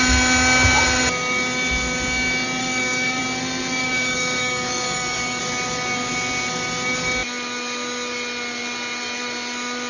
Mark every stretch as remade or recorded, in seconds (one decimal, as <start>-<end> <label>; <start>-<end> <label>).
0.0-2.6 recorded; 2.6-3.2 remade; 3.2-3.8 recorded; 3.8-5.4 remade; 5.4-9.9 recorded